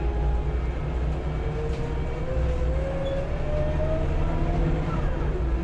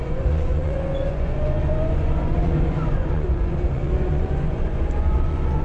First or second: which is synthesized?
second